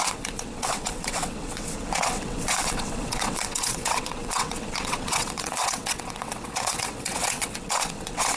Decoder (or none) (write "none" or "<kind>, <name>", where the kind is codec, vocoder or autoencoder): vocoder, WaveNeXt